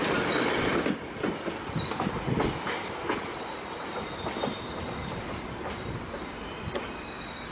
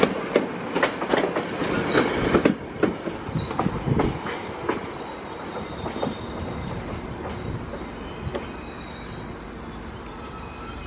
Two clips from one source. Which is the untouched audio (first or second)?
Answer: second